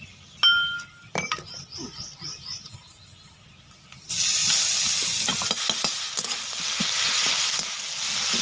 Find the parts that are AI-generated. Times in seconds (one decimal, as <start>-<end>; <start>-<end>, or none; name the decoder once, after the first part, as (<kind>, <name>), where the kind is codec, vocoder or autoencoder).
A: none